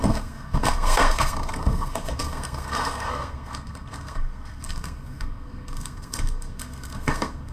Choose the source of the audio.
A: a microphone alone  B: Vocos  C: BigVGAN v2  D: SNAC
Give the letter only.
D